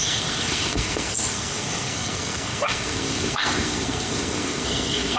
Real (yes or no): no